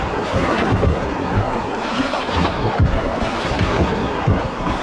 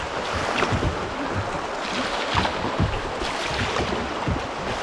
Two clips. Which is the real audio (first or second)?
second